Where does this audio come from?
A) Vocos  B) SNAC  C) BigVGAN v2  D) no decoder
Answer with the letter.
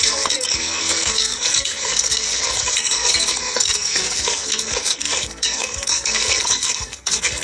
B